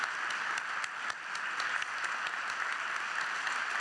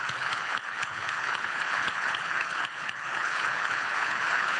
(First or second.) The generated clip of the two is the second